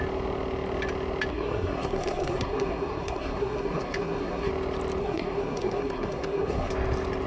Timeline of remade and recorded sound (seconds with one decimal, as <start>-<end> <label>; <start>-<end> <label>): 0.0-1.3 recorded; 1.3-4.5 remade; 4.5-5.0 recorded; 5.0-6.7 remade; 6.7-7.3 recorded